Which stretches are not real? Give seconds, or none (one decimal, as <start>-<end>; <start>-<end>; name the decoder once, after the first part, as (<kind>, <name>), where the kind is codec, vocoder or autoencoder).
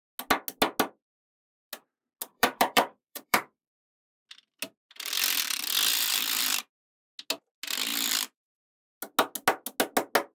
2.3-4.2 (vocoder, BigVGAN v2); 6.1-6.6; 7.9-8.6